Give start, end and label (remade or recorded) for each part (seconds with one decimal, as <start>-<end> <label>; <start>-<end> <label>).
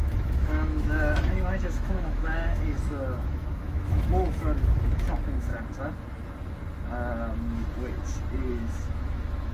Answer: 0.0-5.5 remade; 5.5-8.5 recorded; 8.5-9.5 remade